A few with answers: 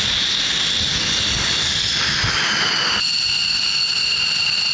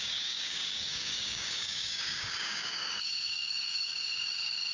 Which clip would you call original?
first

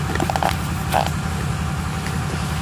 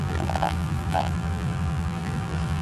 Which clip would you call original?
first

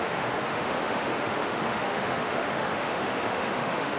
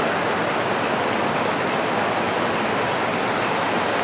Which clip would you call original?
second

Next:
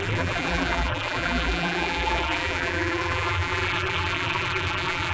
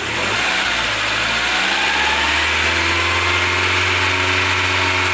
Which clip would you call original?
second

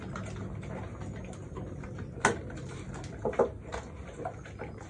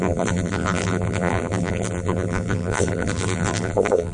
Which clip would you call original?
first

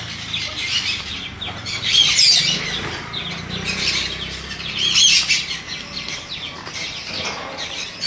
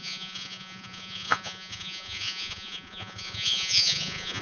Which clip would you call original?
first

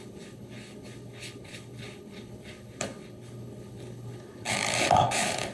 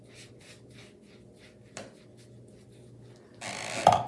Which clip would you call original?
second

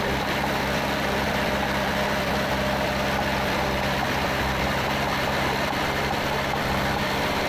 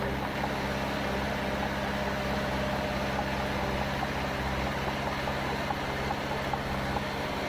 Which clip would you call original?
second